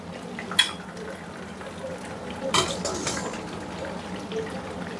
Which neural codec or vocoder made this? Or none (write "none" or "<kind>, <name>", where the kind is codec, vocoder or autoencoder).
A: none